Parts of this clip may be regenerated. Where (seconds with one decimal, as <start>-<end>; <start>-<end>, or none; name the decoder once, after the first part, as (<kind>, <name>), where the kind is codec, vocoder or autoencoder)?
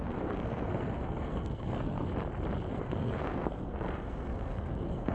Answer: 0.0-2.1 (codec, SNAC); 2.7-5.1